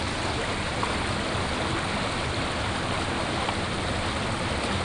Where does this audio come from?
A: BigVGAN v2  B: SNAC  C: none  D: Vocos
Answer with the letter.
C